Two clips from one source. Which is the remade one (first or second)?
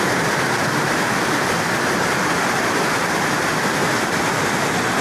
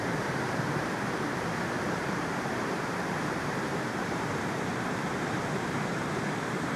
second